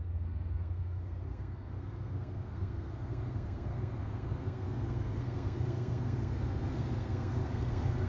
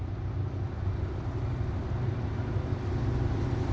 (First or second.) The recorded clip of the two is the second